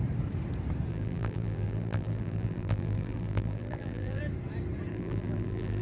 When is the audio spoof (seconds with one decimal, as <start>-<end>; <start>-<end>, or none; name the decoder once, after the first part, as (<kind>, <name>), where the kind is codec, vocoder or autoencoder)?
0.9-4.2 (vocoder, BigVGAN v2); 4.9-5.8